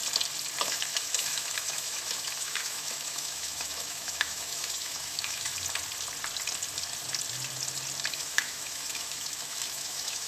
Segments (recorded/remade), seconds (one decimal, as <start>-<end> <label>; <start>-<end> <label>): 0.0-0.6 recorded; 0.6-5.5 remade; 5.5-8.1 recorded; 8.1-10.3 remade